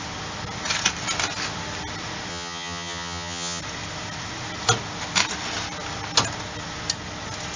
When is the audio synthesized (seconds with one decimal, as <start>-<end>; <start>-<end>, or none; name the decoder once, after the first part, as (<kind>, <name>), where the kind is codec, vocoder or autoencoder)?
2.3-3.6 (vocoder, HiFi-GAN)